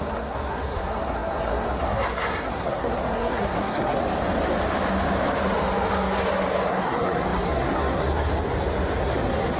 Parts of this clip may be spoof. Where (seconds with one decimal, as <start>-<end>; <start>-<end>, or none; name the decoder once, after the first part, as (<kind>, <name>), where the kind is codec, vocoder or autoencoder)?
0.0-4.0 (codec, SNAC); 6.7-8.3; 9.0-9.6